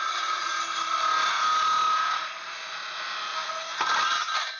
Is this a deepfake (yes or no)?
no